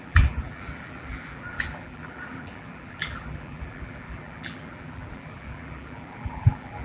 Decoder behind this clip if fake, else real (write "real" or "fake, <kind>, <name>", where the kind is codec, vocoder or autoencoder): fake, vocoder, BigVGAN v2